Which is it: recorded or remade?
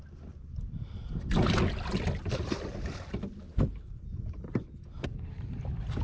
recorded